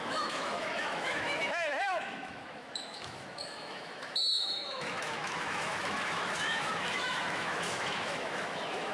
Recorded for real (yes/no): no